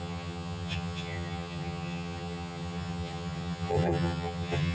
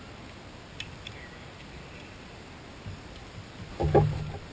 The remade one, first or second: first